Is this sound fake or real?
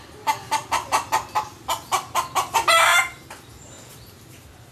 fake